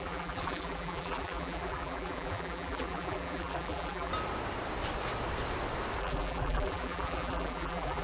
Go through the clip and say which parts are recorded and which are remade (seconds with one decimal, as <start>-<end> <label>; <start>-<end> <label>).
0.0-4.1 remade; 4.1-6.0 recorded; 6.0-8.0 remade